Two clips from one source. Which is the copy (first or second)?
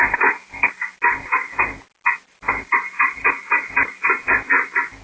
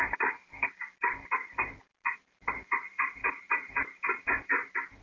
second